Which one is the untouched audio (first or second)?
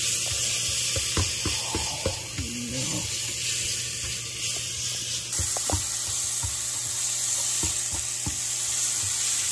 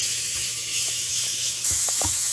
first